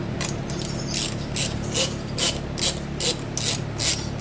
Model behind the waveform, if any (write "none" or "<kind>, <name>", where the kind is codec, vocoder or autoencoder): none